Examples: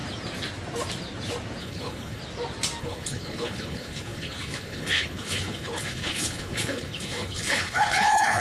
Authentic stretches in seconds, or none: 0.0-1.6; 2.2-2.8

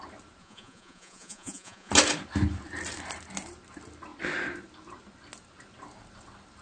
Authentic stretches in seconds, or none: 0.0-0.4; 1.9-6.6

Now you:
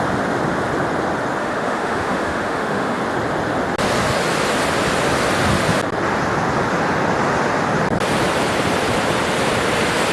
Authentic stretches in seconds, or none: 0.0-1.4; 3.0-10.1

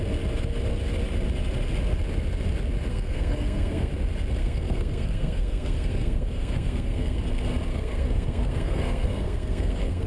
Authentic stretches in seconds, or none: 0.0-2.9; 3.9-4.4; 7.2-7.7